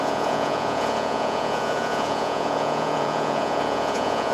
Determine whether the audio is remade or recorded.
remade